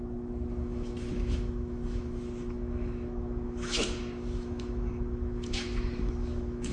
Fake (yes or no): yes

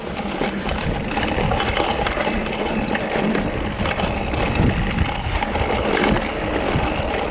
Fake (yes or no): no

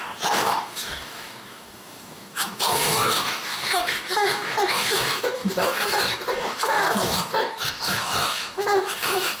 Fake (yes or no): yes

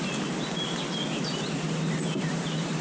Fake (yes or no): no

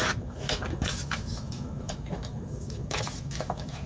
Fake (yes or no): yes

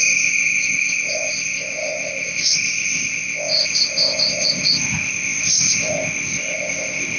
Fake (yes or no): yes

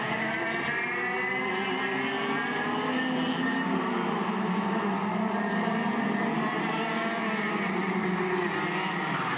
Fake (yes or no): no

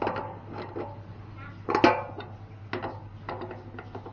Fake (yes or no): no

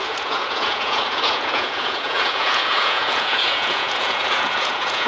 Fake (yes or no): yes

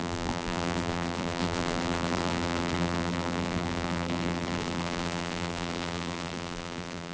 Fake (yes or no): yes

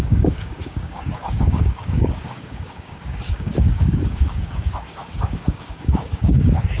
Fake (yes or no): yes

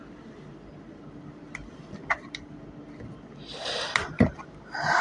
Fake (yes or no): yes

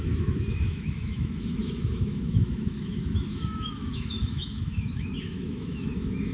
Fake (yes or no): yes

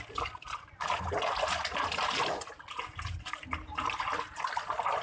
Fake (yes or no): no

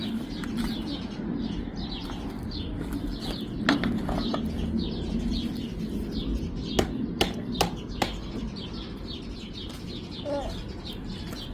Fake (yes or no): no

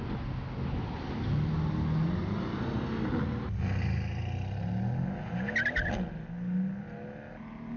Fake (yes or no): no